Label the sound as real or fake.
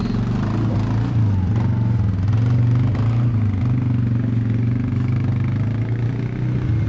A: real